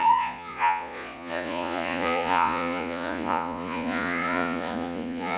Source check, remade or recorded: remade